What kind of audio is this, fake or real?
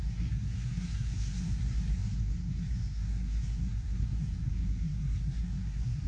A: fake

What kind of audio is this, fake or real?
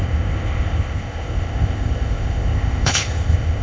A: fake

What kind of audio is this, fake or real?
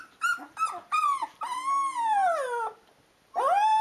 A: real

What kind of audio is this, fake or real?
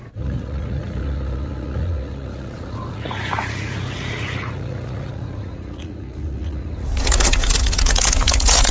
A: fake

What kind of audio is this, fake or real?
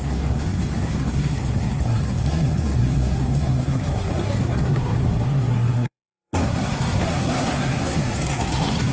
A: fake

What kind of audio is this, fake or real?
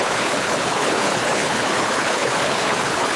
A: fake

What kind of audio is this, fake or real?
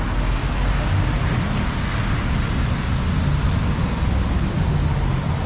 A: real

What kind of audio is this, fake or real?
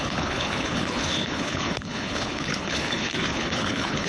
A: fake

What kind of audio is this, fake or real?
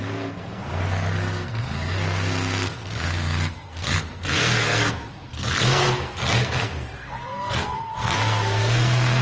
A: fake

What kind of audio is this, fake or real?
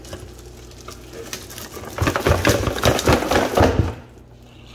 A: real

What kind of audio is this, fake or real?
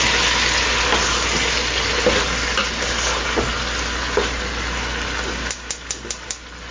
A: real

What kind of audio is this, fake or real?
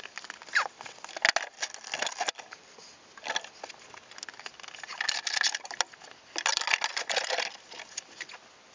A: real